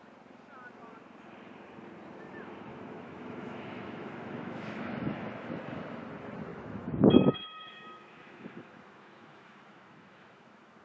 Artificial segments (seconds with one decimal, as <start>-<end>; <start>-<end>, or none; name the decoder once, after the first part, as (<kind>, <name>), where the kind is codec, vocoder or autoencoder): 2.7-5.6 (autoencoder, DAC-VAE); 6.5-10.8